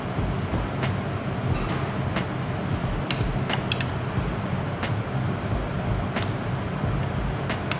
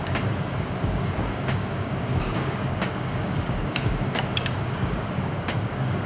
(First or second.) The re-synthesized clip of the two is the second